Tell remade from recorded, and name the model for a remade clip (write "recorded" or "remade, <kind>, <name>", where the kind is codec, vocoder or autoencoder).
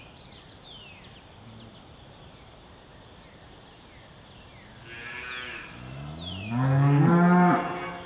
recorded